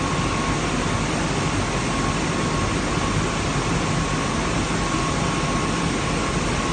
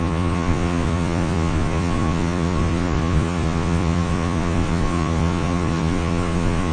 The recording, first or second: first